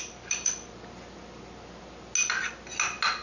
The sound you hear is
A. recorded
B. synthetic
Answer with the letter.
A